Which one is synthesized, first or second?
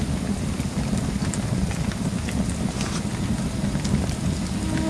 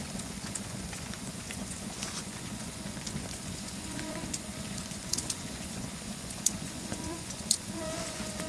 second